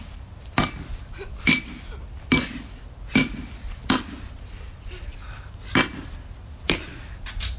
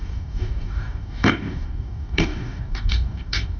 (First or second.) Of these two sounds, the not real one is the second